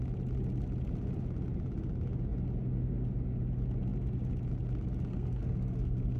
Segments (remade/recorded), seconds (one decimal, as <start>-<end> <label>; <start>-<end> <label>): 0.0-5.1 recorded; 5.1-6.2 remade